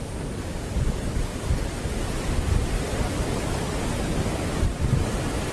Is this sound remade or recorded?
recorded